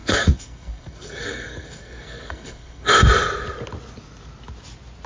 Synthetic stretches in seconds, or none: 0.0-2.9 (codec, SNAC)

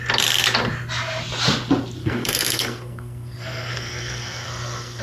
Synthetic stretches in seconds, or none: 2.0-5.0 (codec, SNAC)